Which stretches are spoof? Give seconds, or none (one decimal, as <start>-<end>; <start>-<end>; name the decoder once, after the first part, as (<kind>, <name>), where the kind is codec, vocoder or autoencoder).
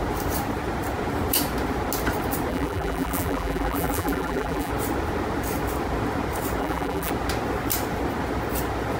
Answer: 2.5-4.7 (vocoder, BigVGAN v2); 6.6-7.1